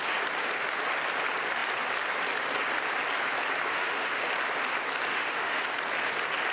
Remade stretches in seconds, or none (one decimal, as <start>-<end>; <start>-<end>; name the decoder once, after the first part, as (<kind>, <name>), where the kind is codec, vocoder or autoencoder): 3.7-4.3 (autoencoder, DAC-VAE); 5.1-5.6